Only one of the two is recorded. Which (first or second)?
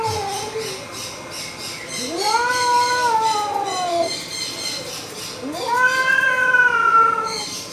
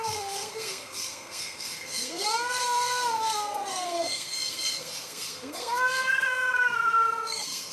first